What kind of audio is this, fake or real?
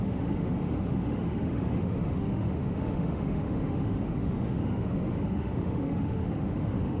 fake